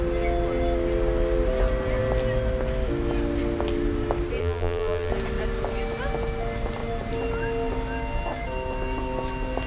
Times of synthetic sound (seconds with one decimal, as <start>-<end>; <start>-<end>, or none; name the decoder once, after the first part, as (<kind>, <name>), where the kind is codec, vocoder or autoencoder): 4.4-5.1 (vocoder, BigVGAN v2)